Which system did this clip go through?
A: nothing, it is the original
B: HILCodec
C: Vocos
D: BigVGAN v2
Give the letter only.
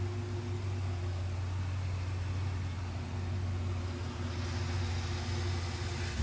A